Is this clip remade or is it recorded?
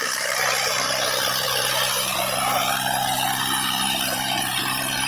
remade